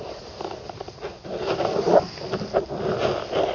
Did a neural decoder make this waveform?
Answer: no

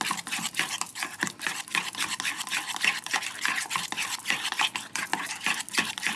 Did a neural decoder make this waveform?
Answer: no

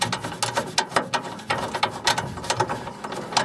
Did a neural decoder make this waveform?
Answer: no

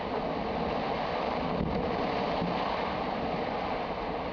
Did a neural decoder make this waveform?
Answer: no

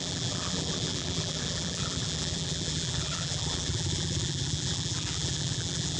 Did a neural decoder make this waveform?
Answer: yes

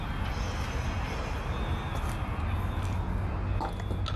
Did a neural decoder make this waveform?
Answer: no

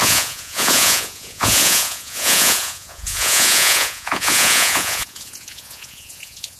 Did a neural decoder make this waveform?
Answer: yes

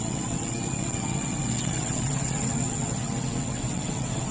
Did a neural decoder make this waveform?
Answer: yes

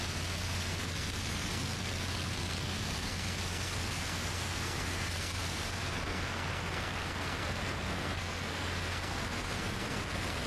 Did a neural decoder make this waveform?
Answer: yes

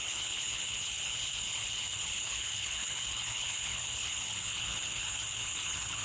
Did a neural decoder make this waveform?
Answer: yes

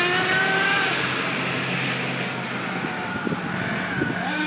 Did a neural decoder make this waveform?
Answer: no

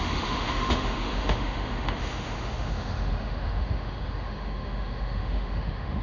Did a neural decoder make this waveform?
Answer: yes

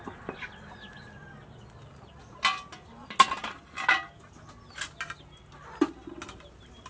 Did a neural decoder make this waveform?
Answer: no